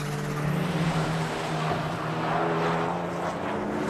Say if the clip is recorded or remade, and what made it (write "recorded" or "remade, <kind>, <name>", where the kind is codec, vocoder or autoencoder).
recorded